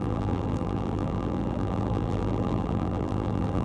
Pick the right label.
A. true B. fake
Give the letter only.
B